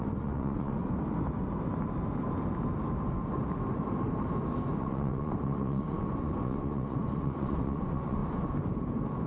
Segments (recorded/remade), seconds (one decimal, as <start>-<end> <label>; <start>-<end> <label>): 0.0-0.8 remade; 0.8-4.8 recorded; 4.8-8.2 remade; 8.2-9.3 recorded